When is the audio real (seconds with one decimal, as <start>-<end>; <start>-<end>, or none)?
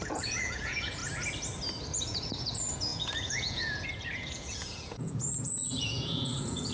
1.0-2.0